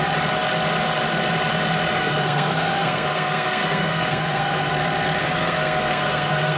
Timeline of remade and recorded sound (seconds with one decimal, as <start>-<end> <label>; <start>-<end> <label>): 0.0-2.0 recorded; 2.0-4.7 remade; 4.7-5.2 recorded; 5.2-6.6 remade